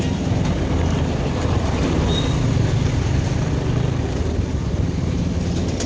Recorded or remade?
recorded